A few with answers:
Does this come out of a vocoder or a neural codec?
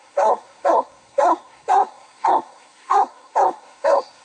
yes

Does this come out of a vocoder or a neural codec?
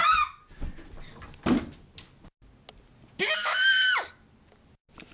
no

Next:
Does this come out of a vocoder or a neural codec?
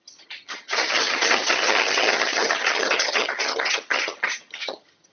yes